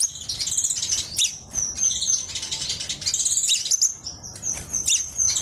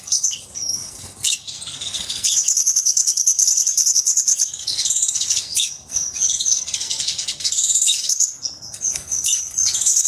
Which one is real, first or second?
first